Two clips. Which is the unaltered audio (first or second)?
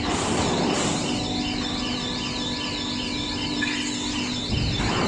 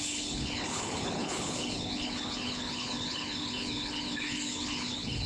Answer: first